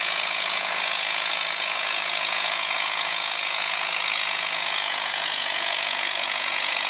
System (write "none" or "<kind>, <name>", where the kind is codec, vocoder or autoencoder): vocoder, Vocos